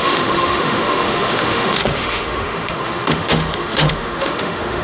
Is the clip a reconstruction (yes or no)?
yes